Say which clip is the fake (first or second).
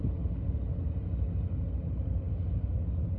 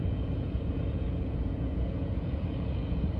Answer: second